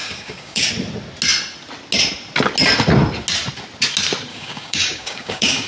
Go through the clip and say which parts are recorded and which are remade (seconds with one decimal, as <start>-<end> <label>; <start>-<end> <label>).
0.0-0.7 remade; 0.7-4.3 recorded; 4.3-5.7 remade